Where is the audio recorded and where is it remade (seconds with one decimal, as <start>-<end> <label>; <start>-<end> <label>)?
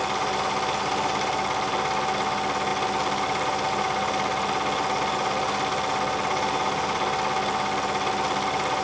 0.0-8.8 recorded